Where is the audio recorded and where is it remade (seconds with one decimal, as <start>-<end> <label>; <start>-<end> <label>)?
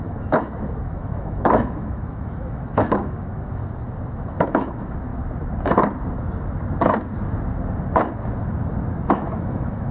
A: 0.0-3.6 remade; 3.6-4.2 recorded; 4.2-5.1 remade; 5.1-9.1 recorded; 9.1-9.9 remade